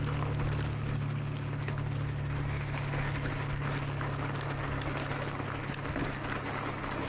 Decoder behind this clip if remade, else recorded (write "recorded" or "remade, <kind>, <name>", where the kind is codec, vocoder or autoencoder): recorded